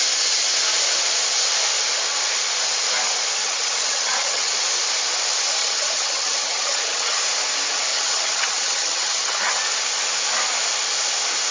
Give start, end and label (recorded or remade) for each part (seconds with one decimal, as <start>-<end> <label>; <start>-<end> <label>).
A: 0.0-3.4 recorded; 3.4-4.5 remade; 4.5-5.6 recorded; 5.6-7.2 remade; 7.2-7.9 recorded; 7.9-9.6 remade; 9.6-11.5 recorded

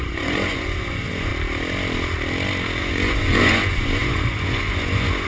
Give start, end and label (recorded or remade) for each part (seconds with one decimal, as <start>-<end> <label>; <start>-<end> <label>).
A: 0.0-1.3 remade; 1.3-2.8 recorded; 2.8-5.3 remade